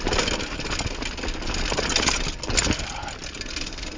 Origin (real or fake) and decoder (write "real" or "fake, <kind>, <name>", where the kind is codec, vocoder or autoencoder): real